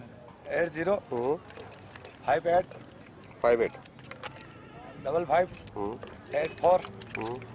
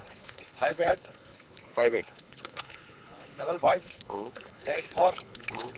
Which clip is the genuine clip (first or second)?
first